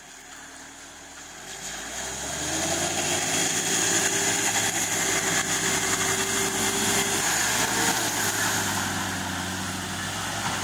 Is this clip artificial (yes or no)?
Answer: no